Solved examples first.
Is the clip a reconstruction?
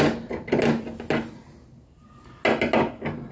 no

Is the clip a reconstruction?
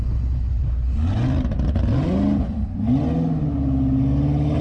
no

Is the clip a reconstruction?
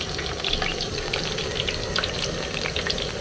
no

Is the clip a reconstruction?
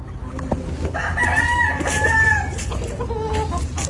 no